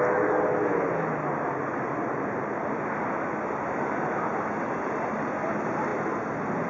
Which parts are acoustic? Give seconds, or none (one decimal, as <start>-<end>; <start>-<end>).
0.0-6.7